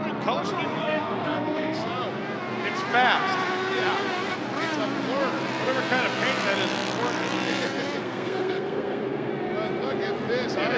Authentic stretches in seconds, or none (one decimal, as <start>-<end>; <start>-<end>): 0.0-0.8; 1.9-8.0; 9.3-10.8